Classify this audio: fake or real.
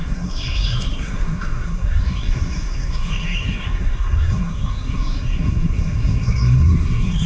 fake